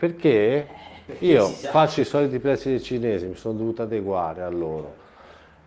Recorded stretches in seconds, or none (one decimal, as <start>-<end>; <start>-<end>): 0.0-0.8; 2.0-5.7